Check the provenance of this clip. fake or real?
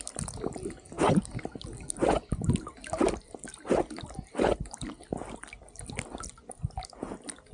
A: real